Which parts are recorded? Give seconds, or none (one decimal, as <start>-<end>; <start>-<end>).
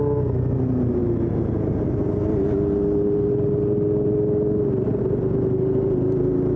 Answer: 0.0-6.6